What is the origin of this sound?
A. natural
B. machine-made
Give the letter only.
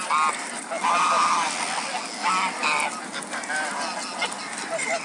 A